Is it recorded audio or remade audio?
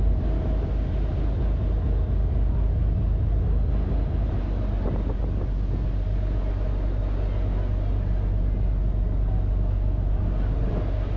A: recorded